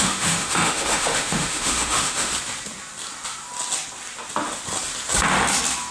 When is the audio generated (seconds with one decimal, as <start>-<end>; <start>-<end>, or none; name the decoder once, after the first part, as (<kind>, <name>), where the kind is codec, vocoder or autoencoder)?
0.0-2.3 (autoencoder, DAC-VAE)